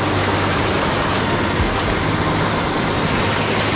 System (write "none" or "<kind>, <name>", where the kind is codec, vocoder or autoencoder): none